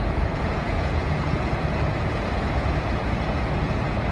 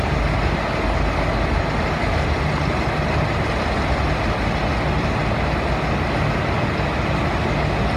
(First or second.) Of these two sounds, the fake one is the first